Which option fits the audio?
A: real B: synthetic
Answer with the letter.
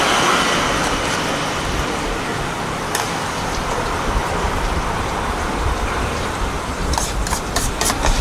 B